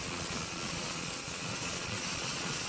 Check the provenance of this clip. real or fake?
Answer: fake